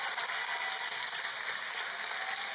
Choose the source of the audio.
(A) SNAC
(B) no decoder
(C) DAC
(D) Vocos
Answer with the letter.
B